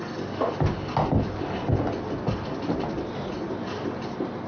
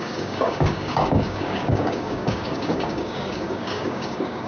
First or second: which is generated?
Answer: second